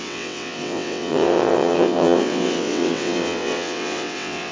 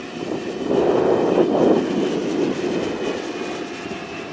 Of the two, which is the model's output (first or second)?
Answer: first